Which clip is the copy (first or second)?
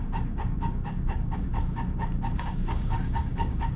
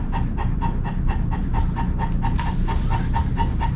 first